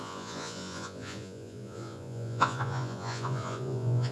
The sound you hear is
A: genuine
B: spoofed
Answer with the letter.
B